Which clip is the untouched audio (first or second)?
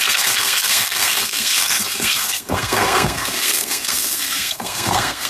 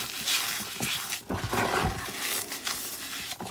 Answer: second